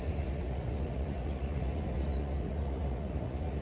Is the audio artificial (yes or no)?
yes